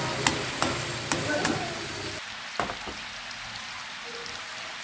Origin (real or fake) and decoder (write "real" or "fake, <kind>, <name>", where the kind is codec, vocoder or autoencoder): real